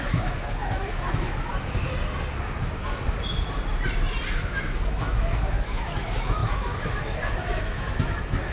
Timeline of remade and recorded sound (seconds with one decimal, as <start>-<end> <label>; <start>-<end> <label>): 0.0-1.5 remade; 1.5-4.3 recorded; 4.3-8.5 remade